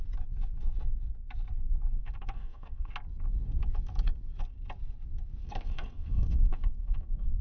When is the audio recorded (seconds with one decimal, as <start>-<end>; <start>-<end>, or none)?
0.0-2.0; 2.9-5.4